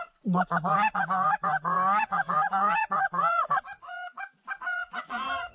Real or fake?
fake